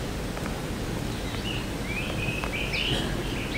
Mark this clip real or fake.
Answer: real